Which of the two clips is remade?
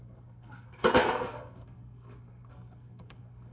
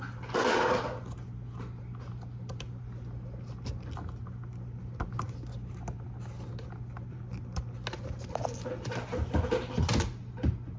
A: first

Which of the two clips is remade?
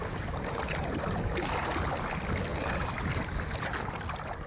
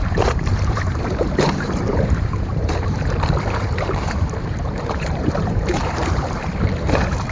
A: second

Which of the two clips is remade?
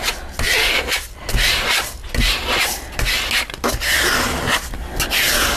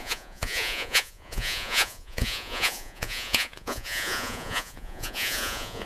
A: second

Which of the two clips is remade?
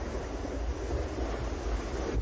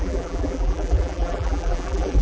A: second